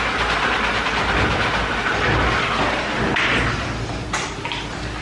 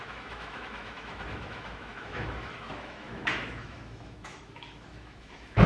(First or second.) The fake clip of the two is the second